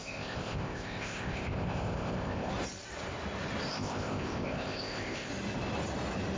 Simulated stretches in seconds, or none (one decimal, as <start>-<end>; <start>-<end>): 0.0-2.5; 3.7-5.3